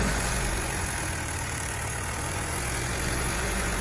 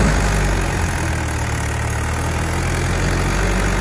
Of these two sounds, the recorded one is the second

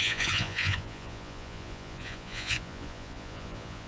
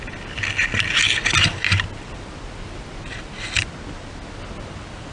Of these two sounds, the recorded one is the second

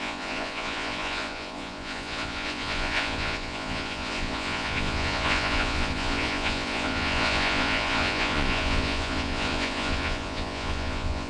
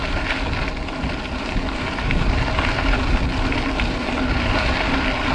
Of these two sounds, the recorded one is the second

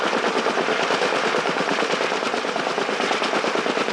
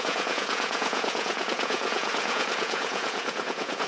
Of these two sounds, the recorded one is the first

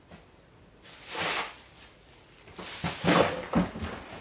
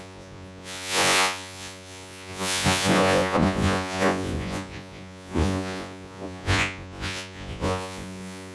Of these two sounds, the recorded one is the first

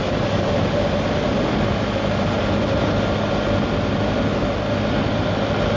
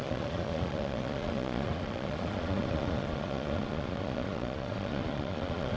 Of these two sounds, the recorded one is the first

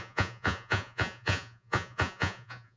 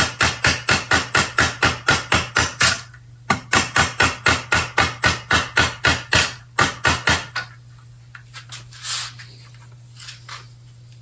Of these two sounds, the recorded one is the second